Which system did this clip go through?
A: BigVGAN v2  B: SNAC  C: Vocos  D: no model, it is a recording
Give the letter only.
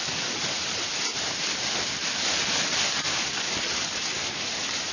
D